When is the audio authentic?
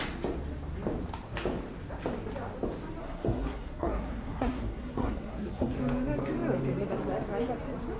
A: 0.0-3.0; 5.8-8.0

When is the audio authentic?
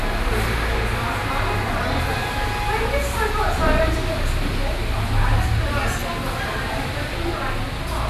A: 0.0-8.1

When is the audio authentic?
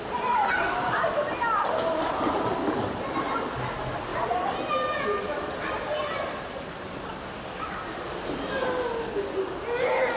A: 0.0-10.2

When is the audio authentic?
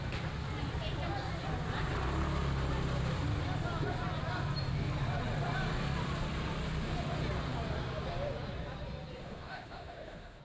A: 0.0-9.2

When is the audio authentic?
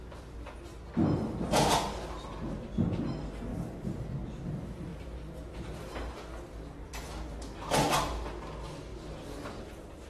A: 0.0-3.5; 4.5-10.1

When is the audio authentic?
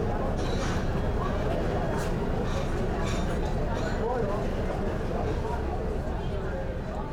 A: 0.0-1.7; 5.2-7.1